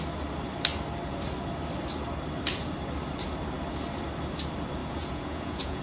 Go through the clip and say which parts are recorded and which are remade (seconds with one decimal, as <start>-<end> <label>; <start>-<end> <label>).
0.0-4.8 recorded; 4.8-5.8 remade

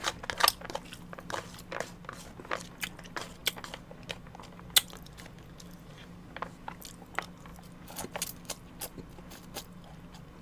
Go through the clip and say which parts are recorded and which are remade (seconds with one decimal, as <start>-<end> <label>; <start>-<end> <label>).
0.0-10.4 recorded

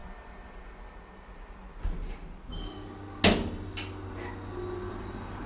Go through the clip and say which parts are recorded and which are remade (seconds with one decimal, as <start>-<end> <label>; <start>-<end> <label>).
0.0-1.6 remade; 1.6-4.9 recorded; 4.9-5.5 remade